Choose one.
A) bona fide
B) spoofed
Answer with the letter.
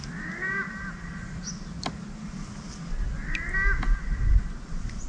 A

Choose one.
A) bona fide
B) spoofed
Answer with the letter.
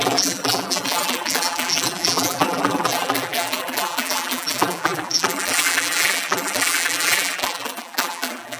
B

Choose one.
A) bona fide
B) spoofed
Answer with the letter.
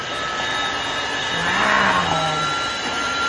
A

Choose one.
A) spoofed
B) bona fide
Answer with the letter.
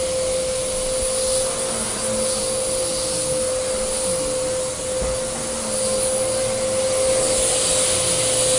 B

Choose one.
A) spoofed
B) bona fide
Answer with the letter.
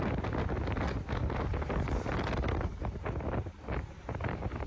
B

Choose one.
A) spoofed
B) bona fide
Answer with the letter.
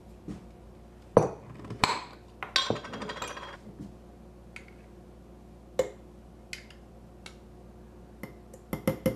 B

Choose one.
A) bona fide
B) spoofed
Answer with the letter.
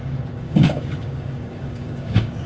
B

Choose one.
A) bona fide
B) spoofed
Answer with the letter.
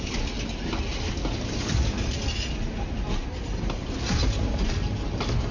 A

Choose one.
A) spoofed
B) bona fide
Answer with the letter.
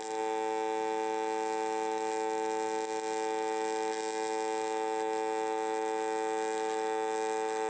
B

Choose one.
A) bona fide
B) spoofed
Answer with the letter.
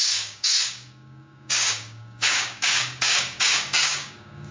B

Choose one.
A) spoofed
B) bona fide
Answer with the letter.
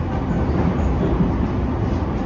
B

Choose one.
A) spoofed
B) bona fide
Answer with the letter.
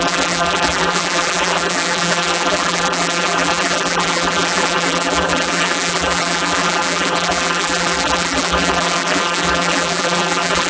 A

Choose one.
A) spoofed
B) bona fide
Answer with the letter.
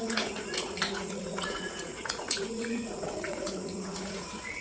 A